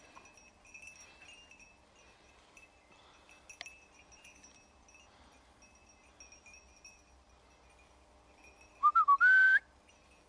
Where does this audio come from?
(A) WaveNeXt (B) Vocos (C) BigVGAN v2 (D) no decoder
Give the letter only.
D